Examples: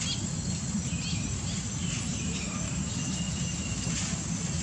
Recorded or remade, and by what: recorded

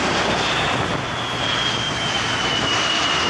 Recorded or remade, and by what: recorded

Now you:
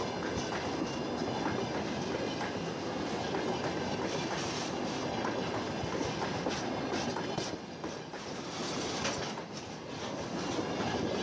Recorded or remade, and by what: recorded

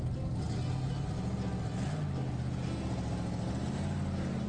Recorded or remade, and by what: recorded